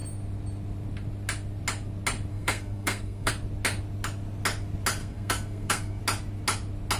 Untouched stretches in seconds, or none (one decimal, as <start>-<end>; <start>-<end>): 0.0-2.3; 3.3-5.0; 6.0-7.0